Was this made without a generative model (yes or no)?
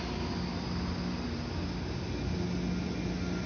yes